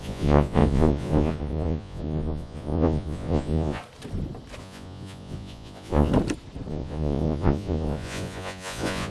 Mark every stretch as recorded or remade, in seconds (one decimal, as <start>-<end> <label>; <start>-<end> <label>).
0.0-3.8 remade; 3.8-4.6 recorded; 4.6-6.1 remade; 6.1-6.7 recorded; 6.7-9.1 remade